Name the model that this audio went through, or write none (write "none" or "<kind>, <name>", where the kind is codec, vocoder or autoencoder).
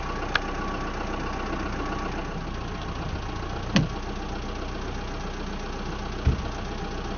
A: none